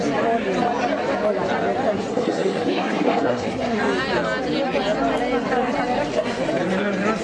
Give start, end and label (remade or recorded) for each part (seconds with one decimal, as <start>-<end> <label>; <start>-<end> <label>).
0.0-2.1 recorded; 2.1-3.8 remade; 3.8-7.2 recorded

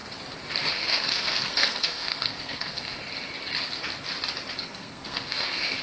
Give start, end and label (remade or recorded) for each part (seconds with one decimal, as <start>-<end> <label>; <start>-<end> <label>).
0.0-0.7 recorded; 0.7-3.0 remade; 3.0-4.5 recorded; 4.5-5.8 remade

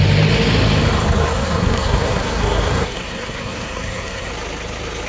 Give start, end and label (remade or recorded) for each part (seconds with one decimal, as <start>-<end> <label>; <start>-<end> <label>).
0.0-1.2 recorded; 1.2-4.3 remade; 4.3-5.1 recorded

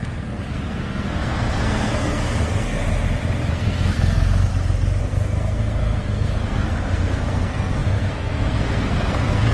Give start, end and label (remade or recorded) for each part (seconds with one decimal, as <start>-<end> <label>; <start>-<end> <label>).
0.0-2.8 remade; 2.8-3.5 recorded; 3.5-4.5 remade; 4.5-5.0 recorded; 5.0-9.5 remade